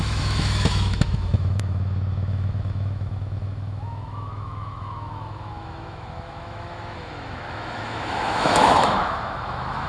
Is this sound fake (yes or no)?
yes